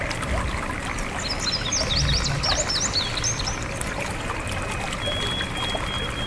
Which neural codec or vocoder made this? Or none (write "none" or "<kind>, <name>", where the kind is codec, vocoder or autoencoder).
none